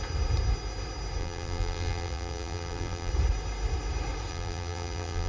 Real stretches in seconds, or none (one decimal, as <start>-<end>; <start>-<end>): 0.0-1.2; 3.1-4.3